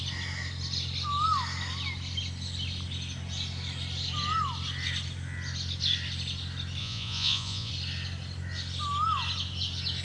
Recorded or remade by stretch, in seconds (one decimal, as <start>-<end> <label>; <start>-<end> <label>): 0.0-6.8 recorded; 6.8-7.7 remade; 7.7-10.0 recorded